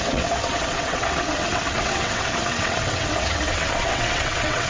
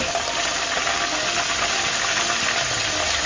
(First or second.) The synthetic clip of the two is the first